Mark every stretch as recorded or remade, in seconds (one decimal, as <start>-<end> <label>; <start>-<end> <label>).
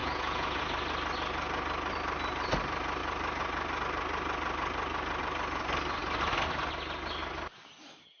0.0-0.6 remade; 0.6-8.2 recorded